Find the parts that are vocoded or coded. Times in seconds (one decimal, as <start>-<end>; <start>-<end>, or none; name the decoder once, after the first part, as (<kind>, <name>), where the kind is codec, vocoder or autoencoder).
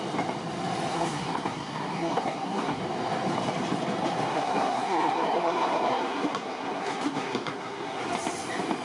0.9-2.8 (codec, SNAC); 4.3-8.0